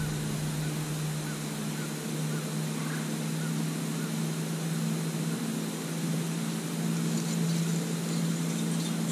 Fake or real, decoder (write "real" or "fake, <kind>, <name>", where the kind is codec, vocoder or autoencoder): real